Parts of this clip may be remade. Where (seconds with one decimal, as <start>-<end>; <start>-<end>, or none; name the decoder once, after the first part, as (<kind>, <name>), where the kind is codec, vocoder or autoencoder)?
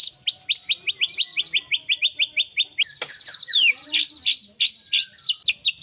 0.9-1.3 (vocoder, BigVGAN v2); 3.1-5.8